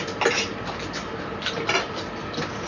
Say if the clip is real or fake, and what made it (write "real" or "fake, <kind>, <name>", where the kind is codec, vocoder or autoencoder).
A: real